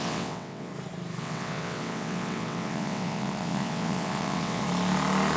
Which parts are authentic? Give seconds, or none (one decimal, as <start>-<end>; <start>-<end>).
0.7-1.2; 4.6-5.4